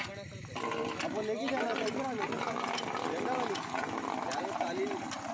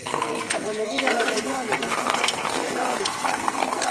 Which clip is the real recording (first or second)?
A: first